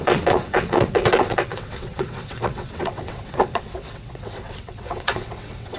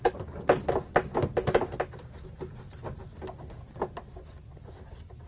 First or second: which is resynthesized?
first